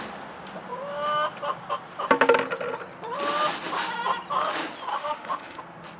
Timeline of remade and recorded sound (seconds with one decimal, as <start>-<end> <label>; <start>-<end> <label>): 0.0-4.9 recorded; 4.9-5.6 remade; 5.6-6.0 recorded